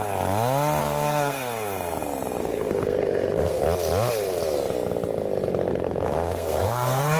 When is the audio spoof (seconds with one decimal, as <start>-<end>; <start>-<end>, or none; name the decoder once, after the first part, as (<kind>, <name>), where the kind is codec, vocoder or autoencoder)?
0.8-1.4 (codec, SNAC); 2.4-3.6; 5.7-7.2